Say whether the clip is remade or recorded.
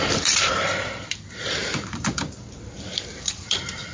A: remade